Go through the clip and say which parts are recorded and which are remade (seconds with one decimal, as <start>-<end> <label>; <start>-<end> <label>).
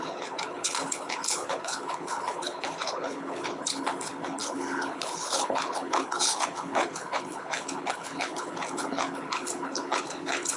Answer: 0.0-10.6 remade